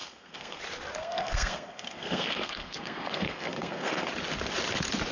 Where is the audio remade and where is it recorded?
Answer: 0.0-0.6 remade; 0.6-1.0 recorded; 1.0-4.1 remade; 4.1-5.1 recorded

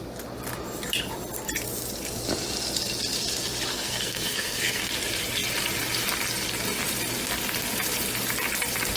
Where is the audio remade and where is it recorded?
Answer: 0.0-3.7 recorded; 3.7-4.9 remade; 4.9-9.0 recorded

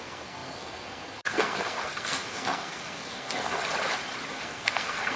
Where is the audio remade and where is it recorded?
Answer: 0.0-3.6 remade; 3.6-4.3 recorded; 4.3-5.2 remade

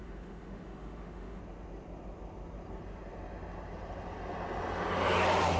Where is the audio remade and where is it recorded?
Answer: 0.0-1.4 remade; 1.4-5.6 recorded

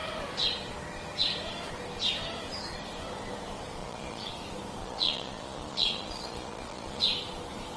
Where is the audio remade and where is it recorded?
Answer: 0.0-3.8 recorded; 3.8-4.3 remade; 4.3-4.8 recorded; 4.8-7.0 remade; 7.0-7.8 recorded

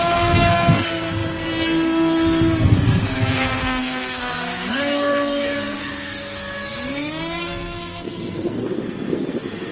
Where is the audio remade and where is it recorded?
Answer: 0.0-9.7 remade

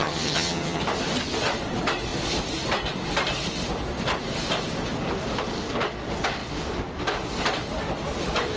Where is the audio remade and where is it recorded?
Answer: 0.0-0.8 remade; 0.8-8.6 recorded